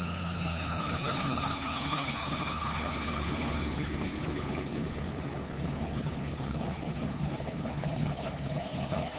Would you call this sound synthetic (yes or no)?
yes